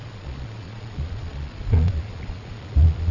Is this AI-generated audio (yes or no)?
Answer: yes